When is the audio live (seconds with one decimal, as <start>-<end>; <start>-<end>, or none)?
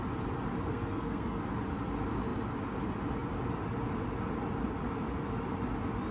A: 0.0-0.7; 1.4-6.1